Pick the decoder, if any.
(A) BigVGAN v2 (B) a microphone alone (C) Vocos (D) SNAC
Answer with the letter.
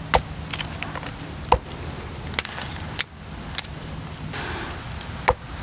B